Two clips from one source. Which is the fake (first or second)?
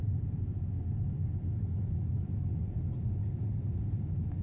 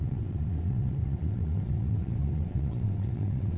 second